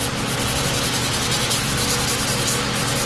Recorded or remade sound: recorded